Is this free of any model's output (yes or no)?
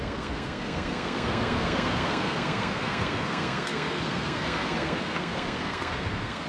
no